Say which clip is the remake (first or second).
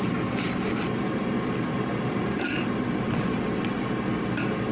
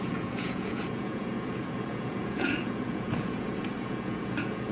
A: second